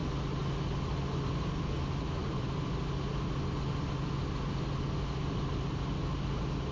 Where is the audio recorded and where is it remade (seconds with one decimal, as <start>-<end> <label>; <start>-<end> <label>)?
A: 0.0-2.2 recorded; 2.2-2.8 remade; 2.8-6.7 recorded